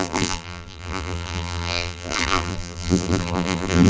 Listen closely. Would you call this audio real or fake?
fake